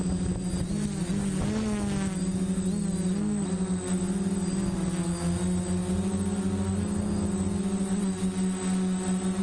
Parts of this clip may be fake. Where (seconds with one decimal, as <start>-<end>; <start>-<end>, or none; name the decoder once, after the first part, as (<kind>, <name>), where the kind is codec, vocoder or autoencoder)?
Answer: none